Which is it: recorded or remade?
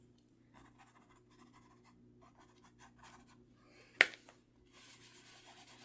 recorded